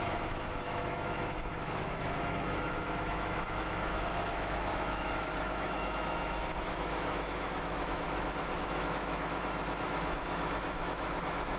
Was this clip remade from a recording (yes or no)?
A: yes